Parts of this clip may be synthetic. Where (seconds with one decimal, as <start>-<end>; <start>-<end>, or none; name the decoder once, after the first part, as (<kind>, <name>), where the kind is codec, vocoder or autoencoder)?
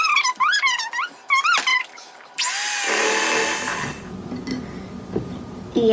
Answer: 1.7-2.2 (vocoder, BigVGAN v2); 3.7-4.4